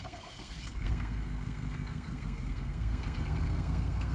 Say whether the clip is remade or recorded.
remade